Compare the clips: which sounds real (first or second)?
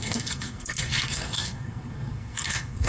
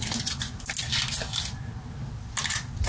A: second